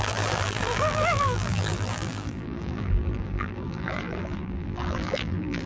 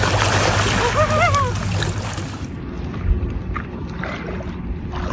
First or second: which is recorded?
second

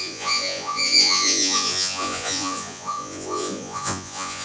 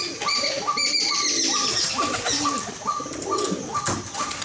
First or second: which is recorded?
second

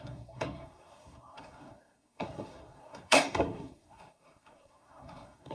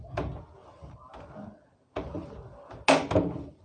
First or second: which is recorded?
second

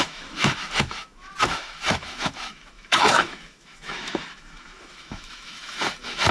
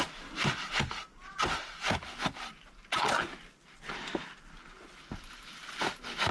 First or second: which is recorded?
second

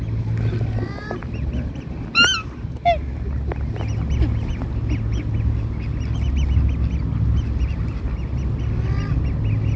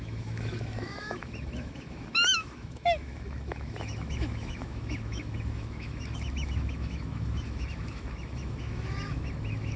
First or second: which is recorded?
first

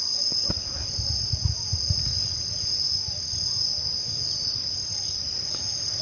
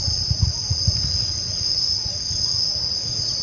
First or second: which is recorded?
first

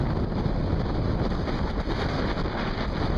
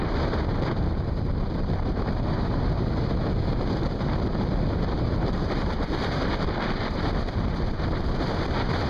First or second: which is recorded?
first